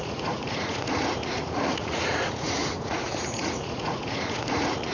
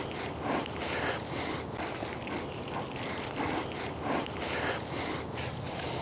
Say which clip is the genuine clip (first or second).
second